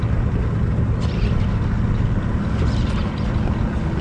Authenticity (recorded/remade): recorded